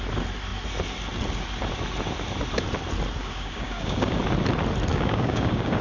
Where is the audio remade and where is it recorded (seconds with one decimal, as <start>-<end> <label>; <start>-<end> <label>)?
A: 0.0-3.2 recorded; 3.2-4.2 remade; 4.2-4.9 recorded; 4.9-5.8 remade